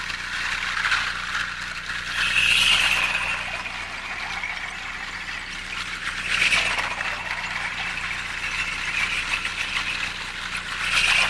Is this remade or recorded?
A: recorded